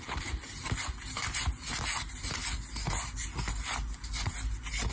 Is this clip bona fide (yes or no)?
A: yes